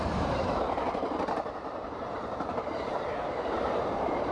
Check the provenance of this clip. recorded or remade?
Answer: remade